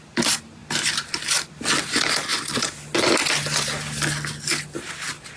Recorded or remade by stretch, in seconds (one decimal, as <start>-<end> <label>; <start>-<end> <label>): 0.0-5.4 recorded